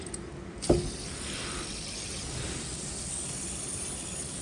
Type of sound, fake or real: real